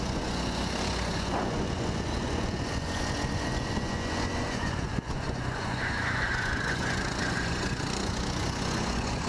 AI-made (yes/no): yes